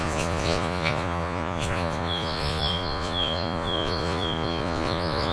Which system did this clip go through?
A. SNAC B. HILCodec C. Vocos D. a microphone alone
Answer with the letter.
C